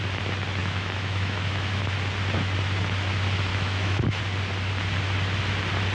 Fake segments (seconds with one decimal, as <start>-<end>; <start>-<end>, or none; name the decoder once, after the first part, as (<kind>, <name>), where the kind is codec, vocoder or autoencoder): 0.6-1.8 (autoencoder, DAC-VAE); 3.5-4.2

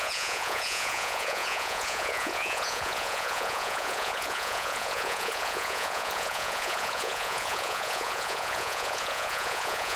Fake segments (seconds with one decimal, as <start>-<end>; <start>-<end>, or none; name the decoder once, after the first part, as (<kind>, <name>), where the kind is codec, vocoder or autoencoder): 0.0-10.0 (vocoder, Vocos)